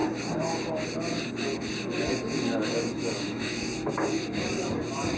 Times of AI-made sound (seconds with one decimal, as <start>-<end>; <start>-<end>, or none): 2.7-3.7